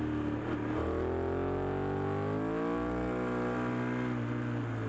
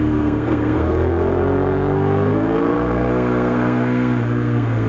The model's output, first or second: second